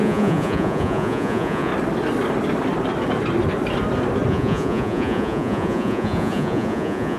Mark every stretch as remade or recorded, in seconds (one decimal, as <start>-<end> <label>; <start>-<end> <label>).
0.0-1.7 remade; 1.7-4.3 recorded; 4.3-7.2 remade